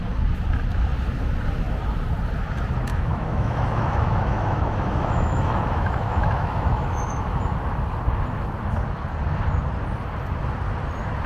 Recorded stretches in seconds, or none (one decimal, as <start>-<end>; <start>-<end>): 0.0-2.9; 7.4-11.3